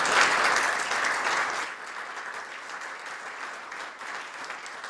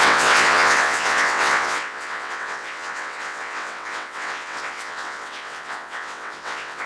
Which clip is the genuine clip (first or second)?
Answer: first